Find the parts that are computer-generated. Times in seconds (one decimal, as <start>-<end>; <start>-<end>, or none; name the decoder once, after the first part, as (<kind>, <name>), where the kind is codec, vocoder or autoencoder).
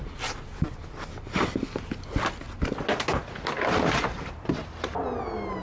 none